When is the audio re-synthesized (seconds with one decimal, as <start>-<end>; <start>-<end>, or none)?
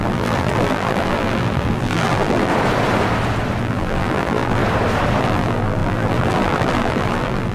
0.0-2.5; 3.6-4.6; 5.2-7.5